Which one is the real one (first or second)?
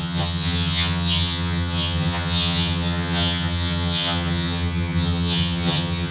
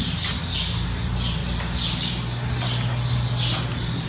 second